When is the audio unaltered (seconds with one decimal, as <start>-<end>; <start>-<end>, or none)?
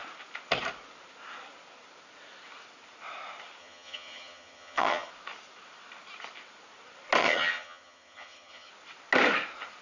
0.0-3.6; 5.1-7.2; 8.7-9.8